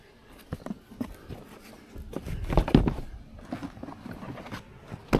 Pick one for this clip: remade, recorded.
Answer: recorded